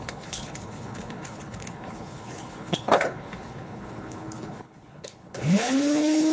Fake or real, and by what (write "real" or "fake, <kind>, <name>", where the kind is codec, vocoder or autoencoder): fake, codec, HILCodec